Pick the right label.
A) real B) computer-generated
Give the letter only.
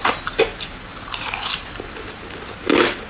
A